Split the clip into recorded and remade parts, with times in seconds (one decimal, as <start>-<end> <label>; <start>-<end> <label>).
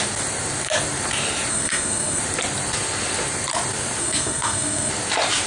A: 0.0-1.5 recorded; 1.5-2.2 remade; 2.2-4.0 recorded; 4.0-4.9 remade; 4.9-5.5 recorded